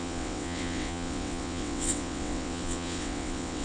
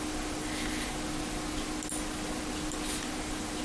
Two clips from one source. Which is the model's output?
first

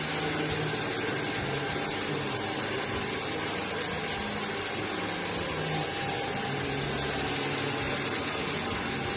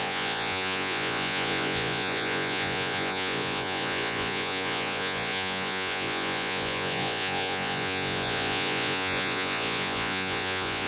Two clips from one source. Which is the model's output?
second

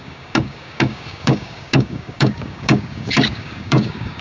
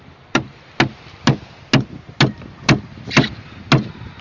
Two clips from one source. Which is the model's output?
first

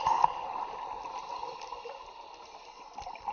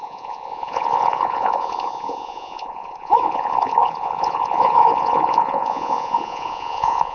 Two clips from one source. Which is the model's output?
second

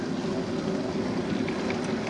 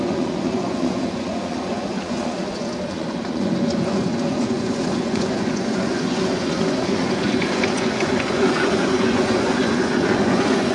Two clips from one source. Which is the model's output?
second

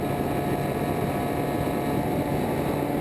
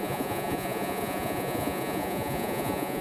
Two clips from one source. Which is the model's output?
second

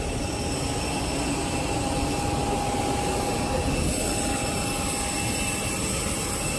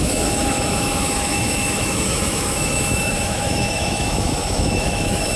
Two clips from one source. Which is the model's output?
second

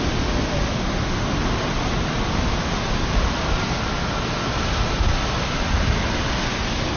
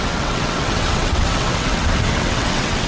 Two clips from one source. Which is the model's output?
second